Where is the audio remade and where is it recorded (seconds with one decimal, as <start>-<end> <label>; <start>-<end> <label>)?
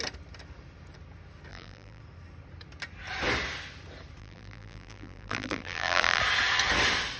0.0-1.5 recorded; 1.5-2.0 remade; 2.0-4.2 recorded; 4.2-6.2 remade; 6.2-7.2 recorded